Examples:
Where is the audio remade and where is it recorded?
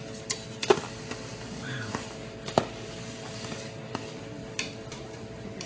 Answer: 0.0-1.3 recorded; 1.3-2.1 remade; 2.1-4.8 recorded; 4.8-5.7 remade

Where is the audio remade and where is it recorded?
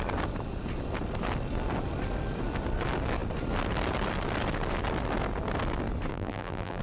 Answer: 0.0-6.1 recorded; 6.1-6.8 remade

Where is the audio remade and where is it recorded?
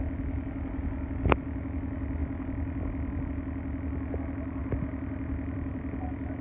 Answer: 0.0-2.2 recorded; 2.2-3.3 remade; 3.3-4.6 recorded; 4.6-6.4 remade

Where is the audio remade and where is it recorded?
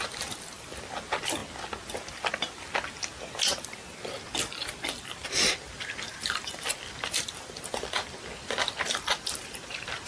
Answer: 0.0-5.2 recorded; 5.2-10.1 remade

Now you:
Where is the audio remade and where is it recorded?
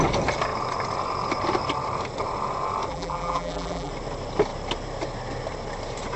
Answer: 0.0-2.9 recorded; 2.9-3.9 remade; 3.9-6.2 recorded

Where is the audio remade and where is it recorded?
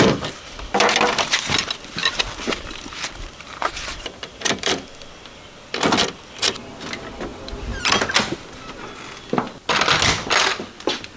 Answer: 0.0-2.0 recorded; 2.0-4.9 remade; 4.9-11.2 recorded